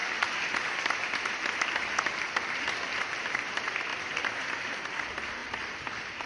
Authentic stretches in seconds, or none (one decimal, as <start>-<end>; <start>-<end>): 0.0-3.9; 4.5-5.4